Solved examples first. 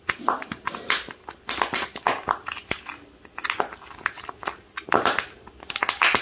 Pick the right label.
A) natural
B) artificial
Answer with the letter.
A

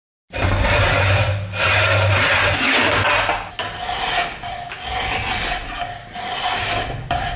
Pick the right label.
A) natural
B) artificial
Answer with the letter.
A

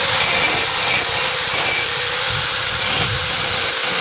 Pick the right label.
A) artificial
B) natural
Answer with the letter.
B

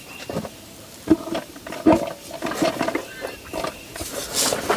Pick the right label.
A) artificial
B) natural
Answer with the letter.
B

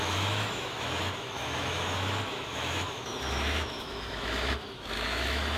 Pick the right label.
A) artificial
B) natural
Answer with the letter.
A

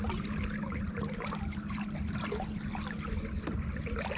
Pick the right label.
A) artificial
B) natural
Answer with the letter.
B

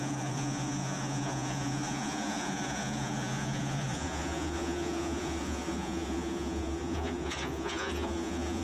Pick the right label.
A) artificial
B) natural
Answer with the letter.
A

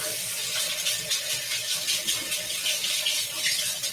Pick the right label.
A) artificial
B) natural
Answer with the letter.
B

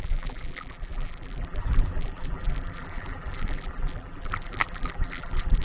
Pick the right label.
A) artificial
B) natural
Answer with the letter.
A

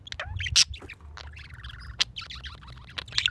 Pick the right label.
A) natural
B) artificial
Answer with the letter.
A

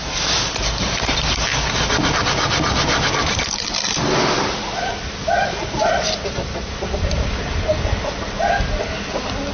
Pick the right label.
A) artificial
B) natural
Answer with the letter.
B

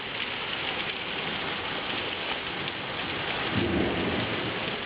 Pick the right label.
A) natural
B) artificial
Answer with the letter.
A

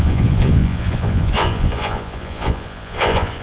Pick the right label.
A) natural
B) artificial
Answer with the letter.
B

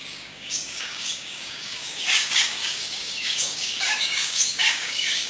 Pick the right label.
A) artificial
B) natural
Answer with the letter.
A